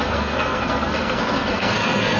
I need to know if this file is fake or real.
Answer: fake